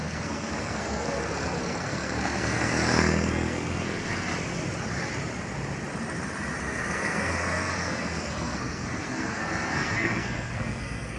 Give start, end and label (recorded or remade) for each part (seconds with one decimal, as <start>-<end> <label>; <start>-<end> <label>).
0.0-4.3 remade; 4.3-6.6 recorded; 6.6-11.2 remade